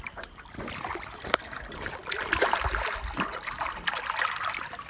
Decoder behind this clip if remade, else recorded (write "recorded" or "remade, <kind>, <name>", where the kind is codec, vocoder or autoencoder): recorded